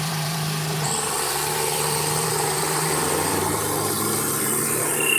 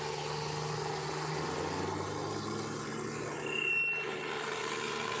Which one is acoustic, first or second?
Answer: second